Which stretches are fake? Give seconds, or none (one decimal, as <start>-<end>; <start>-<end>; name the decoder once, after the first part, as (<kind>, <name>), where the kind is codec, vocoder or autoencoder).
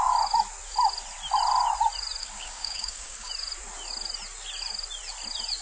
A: 2.2-3.3 (codec, DAC)